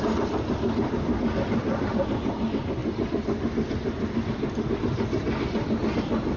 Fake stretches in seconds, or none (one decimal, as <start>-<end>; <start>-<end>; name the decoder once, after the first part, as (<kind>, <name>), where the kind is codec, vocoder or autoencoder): none